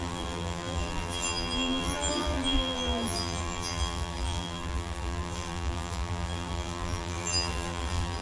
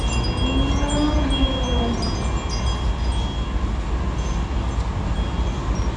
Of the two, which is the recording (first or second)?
second